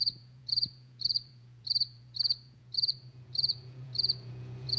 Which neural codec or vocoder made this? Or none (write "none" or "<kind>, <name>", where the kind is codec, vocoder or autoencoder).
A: vocoder, Vocos